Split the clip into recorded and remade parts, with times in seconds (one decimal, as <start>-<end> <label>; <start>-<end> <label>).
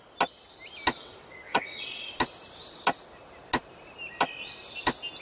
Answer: 0.0-1.0 recorded; 1.0-2.1 remade; 2.1-5.2 recorded